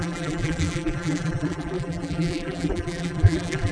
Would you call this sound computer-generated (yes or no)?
yes